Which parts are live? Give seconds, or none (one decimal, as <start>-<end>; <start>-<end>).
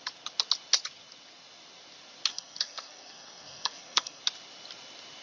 0.0-2.3; 4.2-5.2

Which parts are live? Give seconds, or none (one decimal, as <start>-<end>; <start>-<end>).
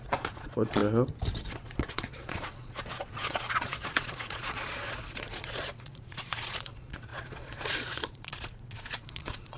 0.8-1.4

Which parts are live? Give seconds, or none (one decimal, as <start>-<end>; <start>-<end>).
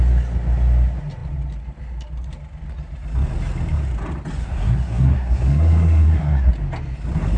0.0-4.4; 6.5-7.4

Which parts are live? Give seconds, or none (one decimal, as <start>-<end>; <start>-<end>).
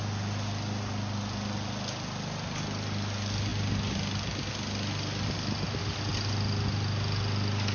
0.0-7.7